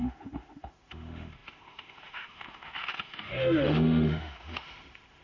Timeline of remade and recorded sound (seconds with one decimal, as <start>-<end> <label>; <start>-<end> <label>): 0.0-5.2 remade